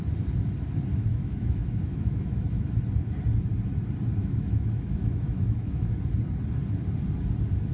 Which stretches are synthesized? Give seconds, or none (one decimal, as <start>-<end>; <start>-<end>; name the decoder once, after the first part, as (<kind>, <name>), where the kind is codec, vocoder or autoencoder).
1.1-2.7 (autoencoder, DAC-VAE); 4.2-6.0